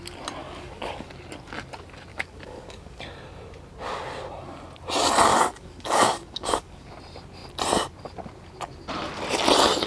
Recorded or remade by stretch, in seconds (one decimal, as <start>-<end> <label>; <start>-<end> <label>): 0.0-0.4 recorded; 0.4-1.1 remade; 1.1-2.1 recorded; 2.1-3.0 remade; 3.0-5.3 recorded; 5.3-6.9 remade; 6.9-9.9 recorded